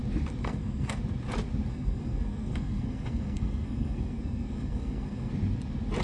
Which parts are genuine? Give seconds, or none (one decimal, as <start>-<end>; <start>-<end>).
0.0-0.4; 1.0-1.7; 5.3-6.0